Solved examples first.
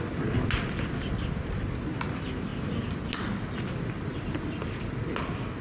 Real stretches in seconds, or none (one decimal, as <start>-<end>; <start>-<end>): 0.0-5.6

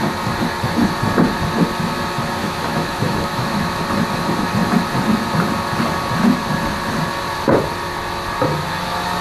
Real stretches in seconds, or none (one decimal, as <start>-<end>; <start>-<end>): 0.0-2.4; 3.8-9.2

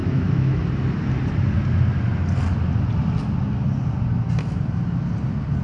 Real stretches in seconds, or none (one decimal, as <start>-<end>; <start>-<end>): 0.6-5.6

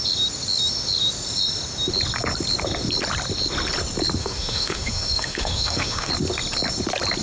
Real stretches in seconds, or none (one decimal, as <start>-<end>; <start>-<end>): 0.0-4.2; 6.1-7.2

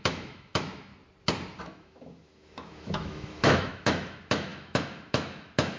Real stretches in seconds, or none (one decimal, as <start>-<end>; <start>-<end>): 0.9-1.6

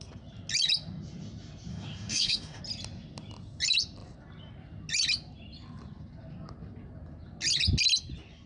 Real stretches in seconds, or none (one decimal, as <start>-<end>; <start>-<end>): 0.0-1.7; 2.6-8.5

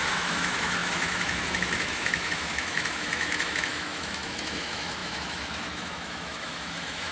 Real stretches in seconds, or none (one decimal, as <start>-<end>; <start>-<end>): none

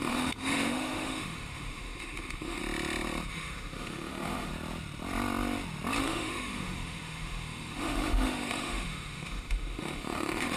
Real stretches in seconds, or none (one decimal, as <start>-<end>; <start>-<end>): 2.6-3.3; 4.5-6.0